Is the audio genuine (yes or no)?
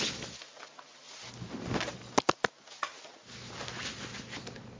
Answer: yes